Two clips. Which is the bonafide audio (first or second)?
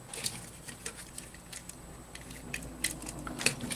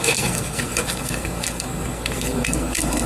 first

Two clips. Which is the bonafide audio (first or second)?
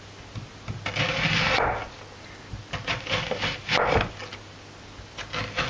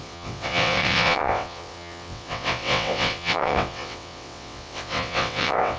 first